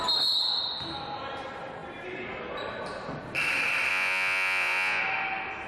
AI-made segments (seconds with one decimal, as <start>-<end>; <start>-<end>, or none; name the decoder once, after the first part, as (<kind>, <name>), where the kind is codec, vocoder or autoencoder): 3.9-5.0 (vocoder, Vocos)